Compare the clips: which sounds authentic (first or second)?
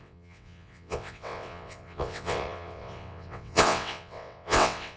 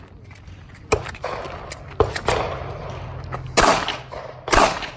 second